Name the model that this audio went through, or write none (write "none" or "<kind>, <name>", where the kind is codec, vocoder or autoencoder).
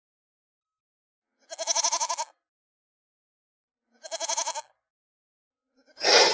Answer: none